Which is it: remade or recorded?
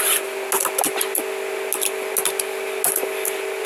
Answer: recorded